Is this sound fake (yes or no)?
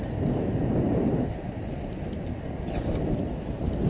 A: no